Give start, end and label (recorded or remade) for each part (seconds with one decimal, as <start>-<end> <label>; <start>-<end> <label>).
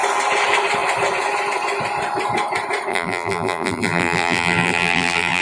0.0-2.9 recorded; 2.9-5.4 remade